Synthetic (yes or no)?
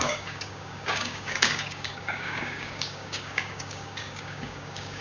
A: yes